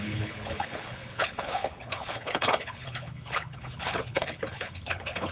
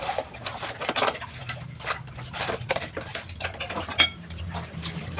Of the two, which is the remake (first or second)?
first